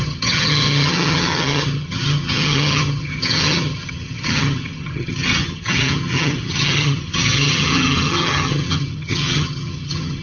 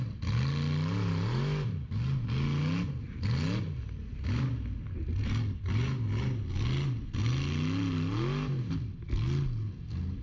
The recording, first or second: second